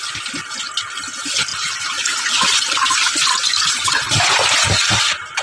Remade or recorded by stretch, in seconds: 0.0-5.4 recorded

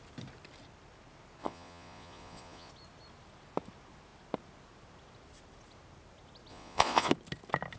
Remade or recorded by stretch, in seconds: 0.0-1.4 recorded; 1.4-2.7 remade; 2.7-6.5 recorded; 6.5-7.1 remade; 7.1-7.8 recorded

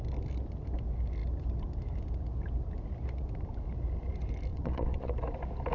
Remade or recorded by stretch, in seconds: 0.0-4.5 recorded; 4.5-5.1 remade; 5.1-5.7 recorded

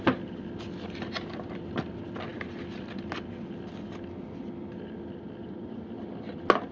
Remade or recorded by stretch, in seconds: 0.0-5.4 recorded; 5.4-5.9 remade; 5.9-6.7 recorded

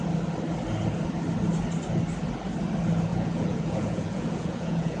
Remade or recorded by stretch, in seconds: 0.0-3.1 recorded; 3.1-5.0 remade

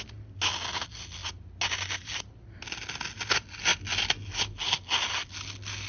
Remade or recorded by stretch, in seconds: 0.0-5.9 recorded